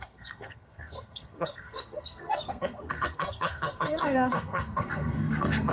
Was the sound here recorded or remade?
remade